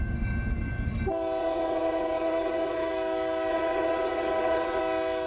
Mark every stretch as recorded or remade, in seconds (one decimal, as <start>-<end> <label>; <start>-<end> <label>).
0.0-1.4 recorded; 1.4-2.9 remade; 2.9-3.5 recorded; 3.5-4.8 remade; 4.8-5.3 recorded